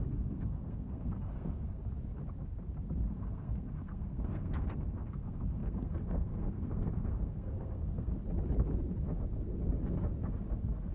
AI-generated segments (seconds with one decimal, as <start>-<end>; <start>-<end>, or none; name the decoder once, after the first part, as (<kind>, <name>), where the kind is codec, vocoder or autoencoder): 0.0-1.8 (codec, SNAC); 3.1-8.1